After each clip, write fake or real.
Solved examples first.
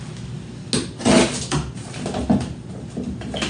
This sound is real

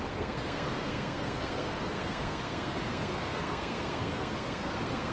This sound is fake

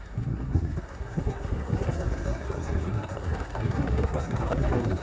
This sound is fake